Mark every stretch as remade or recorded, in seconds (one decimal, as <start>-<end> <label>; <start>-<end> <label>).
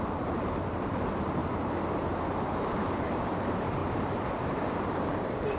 0.0-1.4 remade; 1.4-2.6 recorded; 2.6-5.6 remade